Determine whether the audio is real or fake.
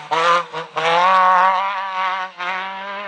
real